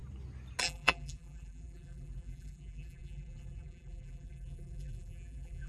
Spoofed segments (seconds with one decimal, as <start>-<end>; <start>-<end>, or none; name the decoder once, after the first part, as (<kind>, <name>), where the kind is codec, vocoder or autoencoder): 0.6-5.7 (vocoder, BigVGAN v2)